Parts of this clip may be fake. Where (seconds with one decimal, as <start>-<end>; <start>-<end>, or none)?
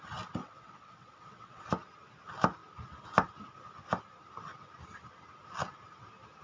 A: 0.4-1.7